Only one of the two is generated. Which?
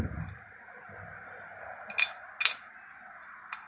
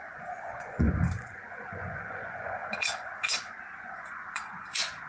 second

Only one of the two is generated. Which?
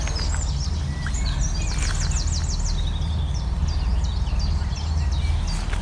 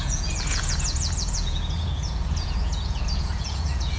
second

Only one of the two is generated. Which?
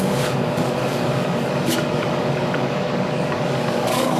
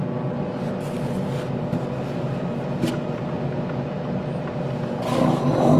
first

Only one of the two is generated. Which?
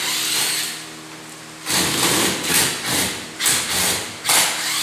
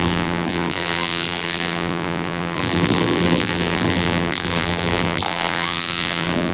second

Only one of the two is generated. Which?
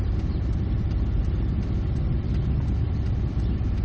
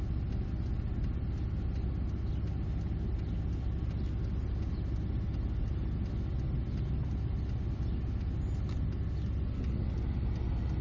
first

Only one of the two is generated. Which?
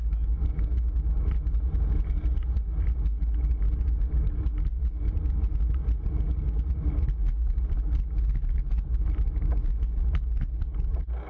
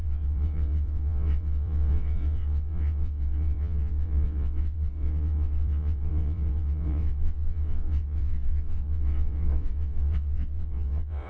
second